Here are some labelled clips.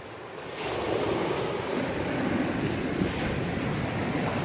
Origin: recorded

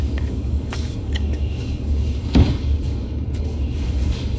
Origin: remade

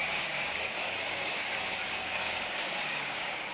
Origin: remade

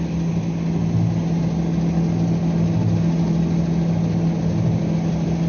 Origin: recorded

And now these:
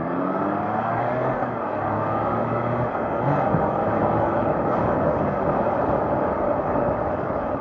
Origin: remade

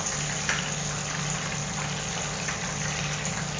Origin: recorded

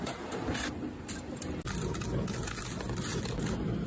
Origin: recorded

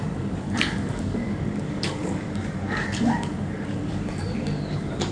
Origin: remade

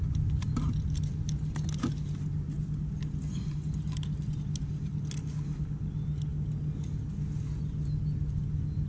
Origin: recorded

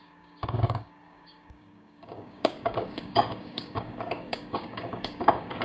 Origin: remade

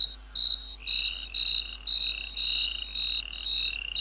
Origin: recorded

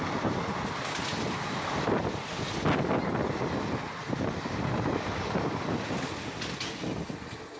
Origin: recorded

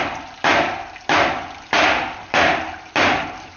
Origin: recorded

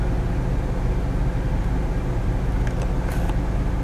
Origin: recorded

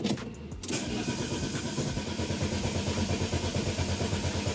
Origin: recorded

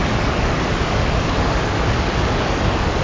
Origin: remade